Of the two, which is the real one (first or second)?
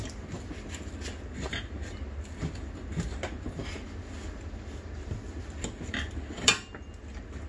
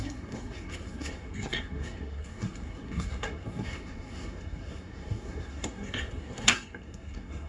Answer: first